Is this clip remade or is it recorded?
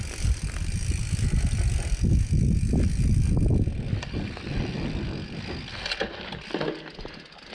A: recorded